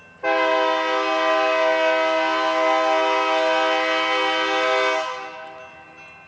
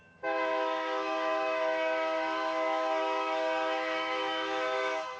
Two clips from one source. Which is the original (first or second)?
first